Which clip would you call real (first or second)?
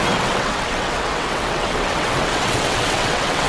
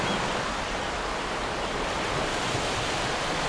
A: second